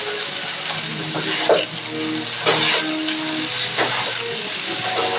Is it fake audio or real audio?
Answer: real